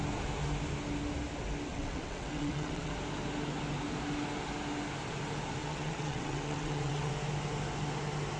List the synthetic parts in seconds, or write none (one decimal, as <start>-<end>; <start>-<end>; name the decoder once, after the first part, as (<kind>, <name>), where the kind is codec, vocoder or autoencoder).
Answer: 1.7-2.9 (vocoder, WaveNeXt); 5.6-7.1